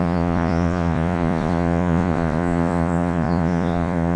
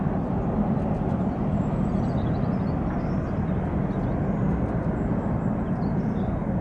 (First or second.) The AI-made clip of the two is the first